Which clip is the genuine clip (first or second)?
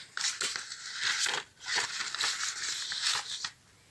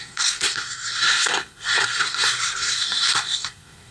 first